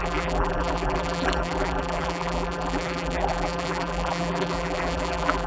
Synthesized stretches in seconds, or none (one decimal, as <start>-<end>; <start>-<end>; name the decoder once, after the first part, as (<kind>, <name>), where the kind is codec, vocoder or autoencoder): 0.0-5.5 (vocoder, BigVGAN v2)

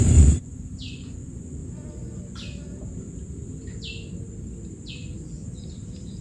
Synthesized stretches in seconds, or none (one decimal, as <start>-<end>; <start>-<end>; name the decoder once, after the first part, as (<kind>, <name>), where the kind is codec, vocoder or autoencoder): 0.0-1.6 (vocoder, Vocos); 4.9-5.4

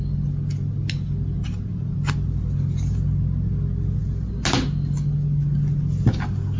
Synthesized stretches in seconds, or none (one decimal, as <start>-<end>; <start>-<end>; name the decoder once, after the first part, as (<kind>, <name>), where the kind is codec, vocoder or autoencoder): none

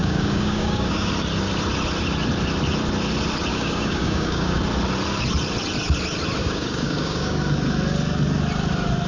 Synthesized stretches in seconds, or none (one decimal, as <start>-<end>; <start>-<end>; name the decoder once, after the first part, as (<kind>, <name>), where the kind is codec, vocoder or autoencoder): 0.0-1.1 (codec, DAC); 3.5-4.6; 6.4-7.4

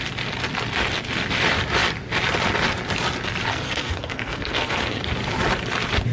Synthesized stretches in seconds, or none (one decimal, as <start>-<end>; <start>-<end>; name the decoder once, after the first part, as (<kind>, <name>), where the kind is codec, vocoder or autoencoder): 3.5-5.0 (codec, SNAC)

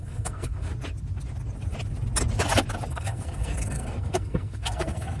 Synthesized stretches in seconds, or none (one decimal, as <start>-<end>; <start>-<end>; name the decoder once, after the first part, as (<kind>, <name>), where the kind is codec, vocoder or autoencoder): 0.0-0.7 (codec, SNAC); 2.9-5.2

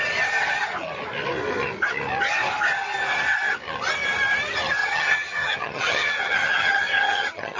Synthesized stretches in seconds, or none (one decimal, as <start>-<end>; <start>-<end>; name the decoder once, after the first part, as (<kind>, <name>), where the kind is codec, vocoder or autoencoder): 4.8-7.6 (vocoder, HiFi-GAN)